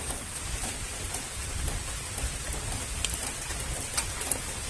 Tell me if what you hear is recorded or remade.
recorded